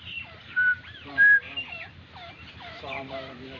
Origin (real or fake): fake